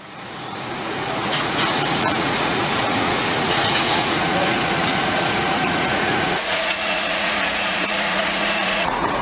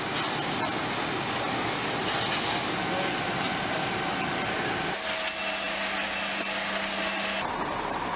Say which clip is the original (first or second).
second